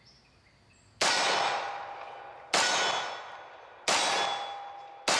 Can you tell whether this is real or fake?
real